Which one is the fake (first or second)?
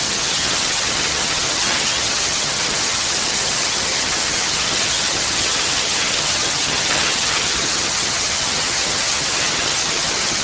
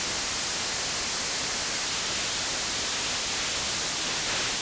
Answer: first